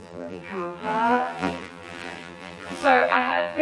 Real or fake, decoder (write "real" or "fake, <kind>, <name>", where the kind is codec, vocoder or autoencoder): fake, vocoder, BigVGAN v2